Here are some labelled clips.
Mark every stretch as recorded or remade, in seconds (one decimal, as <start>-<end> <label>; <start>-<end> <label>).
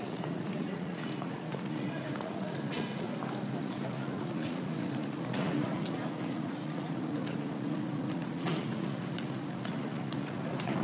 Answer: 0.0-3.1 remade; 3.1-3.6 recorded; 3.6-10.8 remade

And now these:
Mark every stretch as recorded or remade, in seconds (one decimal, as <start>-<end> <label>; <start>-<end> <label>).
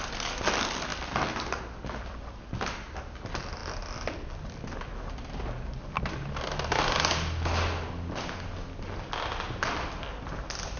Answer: 0.0-10.8 recorded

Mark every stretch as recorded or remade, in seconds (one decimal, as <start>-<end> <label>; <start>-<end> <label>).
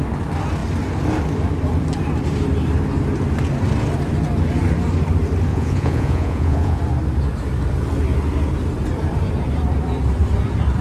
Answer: 0.0-5.5 recorded; 5.5-6.8 remade; 6.8-10.8 recorded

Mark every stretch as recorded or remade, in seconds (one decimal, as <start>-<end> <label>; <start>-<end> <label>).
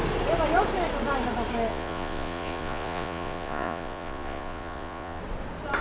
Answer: 0.0-1.7 recorded; 1.7-5.2 remade; 5.2-5.8 recorded